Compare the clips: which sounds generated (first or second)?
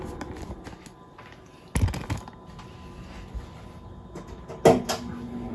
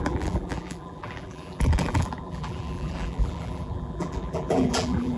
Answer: second